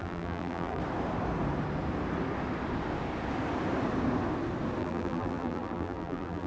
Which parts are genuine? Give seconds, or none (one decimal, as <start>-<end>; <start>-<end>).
0.8-4.8